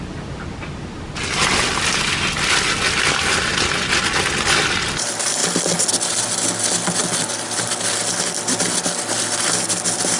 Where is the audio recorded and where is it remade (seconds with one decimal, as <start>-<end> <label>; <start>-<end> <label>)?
0.0-10.2 recorded